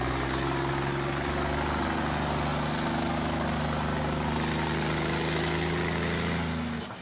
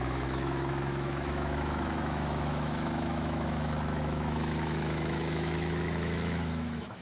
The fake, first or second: second